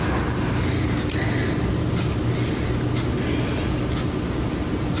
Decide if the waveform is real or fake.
real